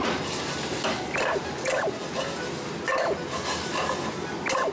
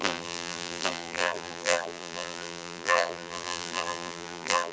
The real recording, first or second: first